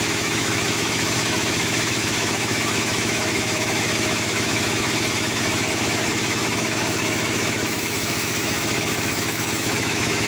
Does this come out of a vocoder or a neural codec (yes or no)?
yes